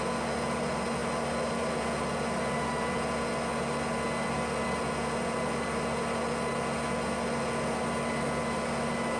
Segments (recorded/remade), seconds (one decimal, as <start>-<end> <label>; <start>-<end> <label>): 0.0-9.2 recorded